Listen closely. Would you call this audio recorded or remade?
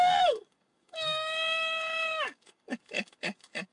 remade